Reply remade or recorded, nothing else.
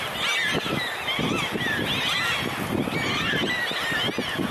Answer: recorded